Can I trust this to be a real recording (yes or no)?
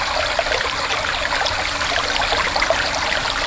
yes